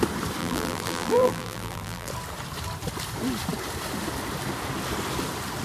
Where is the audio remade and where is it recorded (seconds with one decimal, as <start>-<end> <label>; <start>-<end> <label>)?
0.0-0.4 recorded; 0.4-2.1 remade; 2.1-5.6 recorded